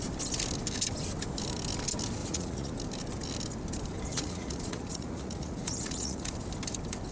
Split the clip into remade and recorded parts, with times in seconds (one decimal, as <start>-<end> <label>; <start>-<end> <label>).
0.0-2.2 recorded; 2.2-2.7 remade; 2.7-4.1 recorded; 4.1-6.3 remade; 6.3-7.1 recorded